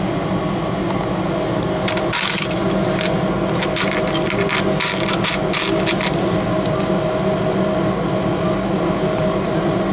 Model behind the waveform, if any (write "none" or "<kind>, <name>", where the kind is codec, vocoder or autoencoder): none